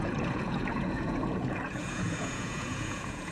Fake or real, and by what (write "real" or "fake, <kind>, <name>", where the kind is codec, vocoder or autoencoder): fake, vocoder, Vocos